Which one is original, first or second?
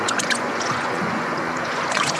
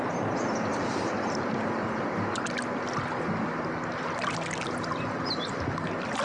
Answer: second